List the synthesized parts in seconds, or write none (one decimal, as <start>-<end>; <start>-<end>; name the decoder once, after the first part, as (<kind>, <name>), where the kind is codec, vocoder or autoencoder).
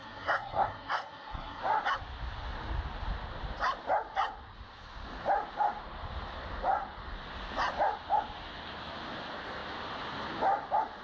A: 0.0-1.6 (codec, SNAC)